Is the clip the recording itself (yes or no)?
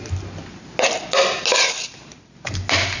yes